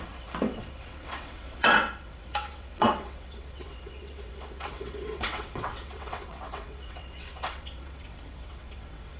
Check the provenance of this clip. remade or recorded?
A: remade